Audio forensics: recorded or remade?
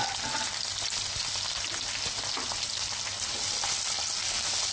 recorded